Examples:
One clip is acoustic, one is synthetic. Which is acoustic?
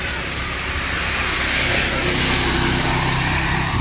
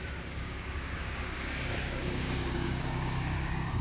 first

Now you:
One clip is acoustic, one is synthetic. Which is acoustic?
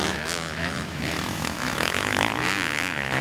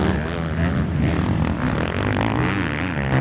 second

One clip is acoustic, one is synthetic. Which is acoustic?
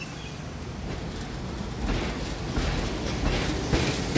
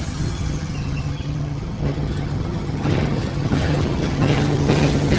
first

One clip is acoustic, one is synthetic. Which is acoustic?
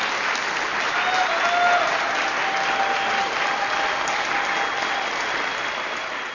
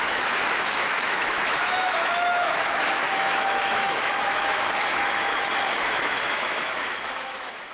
first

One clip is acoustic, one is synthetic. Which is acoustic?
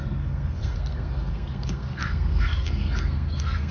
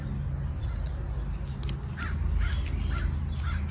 second